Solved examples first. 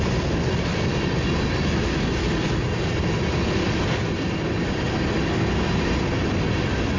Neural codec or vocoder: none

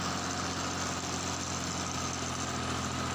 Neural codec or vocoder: none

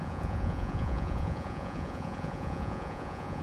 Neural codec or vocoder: vocoder, Vocos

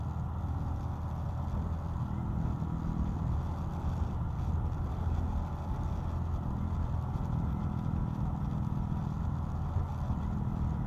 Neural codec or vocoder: none